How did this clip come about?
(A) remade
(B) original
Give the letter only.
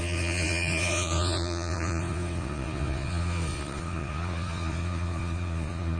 A